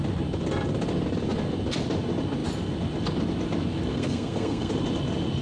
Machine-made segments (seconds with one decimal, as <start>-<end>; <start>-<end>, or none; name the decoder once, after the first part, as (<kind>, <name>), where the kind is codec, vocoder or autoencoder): 3.9-4.7 (codec, SNAC)